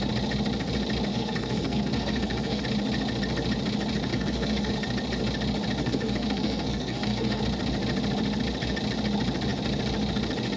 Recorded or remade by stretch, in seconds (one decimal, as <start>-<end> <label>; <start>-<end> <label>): 0.0-1.1 recorded; 1.1-2.6 remade; 2.6-4.1 recorded; 4.1-4.7 remade; 4.7-5.8 recorded; 5.8-7.4 remade; 7.4-10.6 recorded